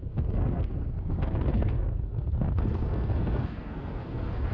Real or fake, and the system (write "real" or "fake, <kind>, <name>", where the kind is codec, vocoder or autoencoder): fake, codec, SNAC